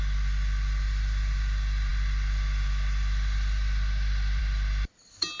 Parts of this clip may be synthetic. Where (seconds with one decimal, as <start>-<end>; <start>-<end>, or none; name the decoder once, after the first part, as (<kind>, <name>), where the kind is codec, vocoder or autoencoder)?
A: none